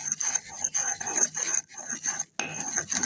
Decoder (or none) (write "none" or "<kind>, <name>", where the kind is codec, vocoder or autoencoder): none